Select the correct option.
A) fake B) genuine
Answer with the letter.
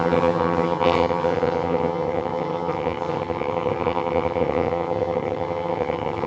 A